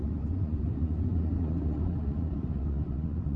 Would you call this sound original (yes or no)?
no